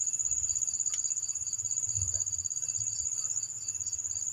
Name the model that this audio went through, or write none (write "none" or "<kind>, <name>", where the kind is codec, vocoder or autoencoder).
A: none